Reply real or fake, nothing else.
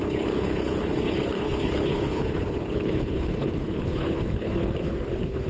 fake